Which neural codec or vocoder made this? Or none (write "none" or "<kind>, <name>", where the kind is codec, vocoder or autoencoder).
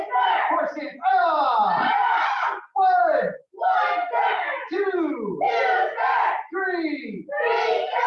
none